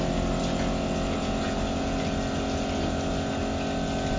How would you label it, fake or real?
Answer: real